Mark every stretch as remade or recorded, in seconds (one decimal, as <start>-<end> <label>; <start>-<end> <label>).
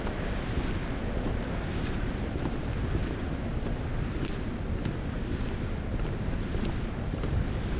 0.0-7.8 recorded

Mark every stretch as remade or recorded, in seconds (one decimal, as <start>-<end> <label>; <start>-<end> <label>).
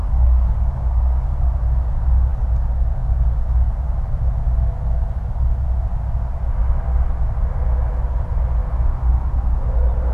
0.0-1.4 remade; 1.4-2.3 recorded; 2.3-3.7 remade; 3.7-10.1 recorded